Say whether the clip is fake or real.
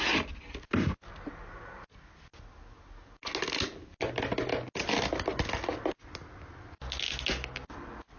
real